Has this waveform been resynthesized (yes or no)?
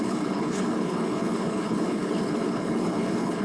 yes